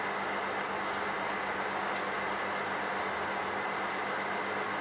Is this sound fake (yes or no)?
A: no